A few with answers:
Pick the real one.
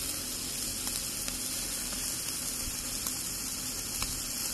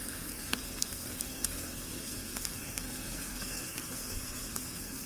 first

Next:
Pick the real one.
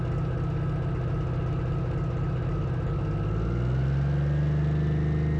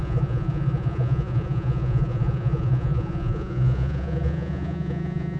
first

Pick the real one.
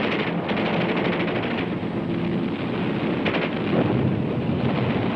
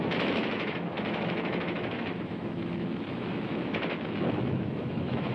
first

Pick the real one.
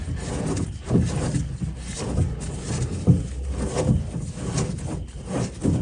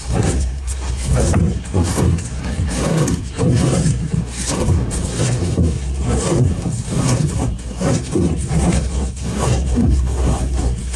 first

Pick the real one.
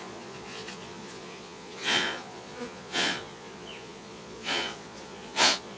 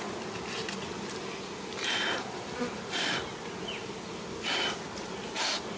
second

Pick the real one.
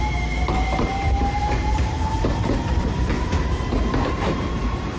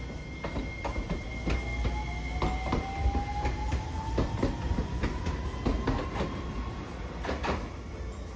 second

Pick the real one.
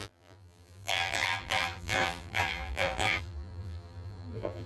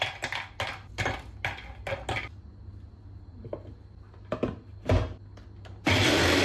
second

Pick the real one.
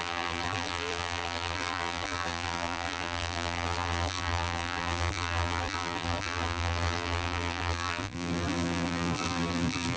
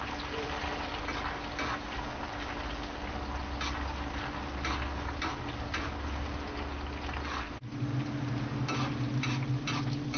second